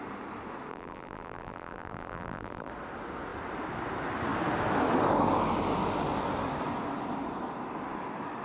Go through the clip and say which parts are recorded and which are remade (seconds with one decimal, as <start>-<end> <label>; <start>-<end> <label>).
0.0-0.7 recorded; 0.7-2.7 remade; 2.7-8.4 recorded